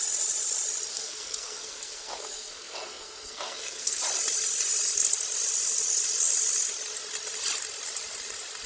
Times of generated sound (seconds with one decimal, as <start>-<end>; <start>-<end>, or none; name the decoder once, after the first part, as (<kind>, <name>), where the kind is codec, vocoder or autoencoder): 0.9-4.0 (codec, SNAC)